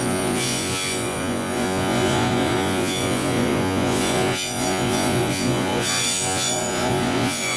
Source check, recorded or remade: remade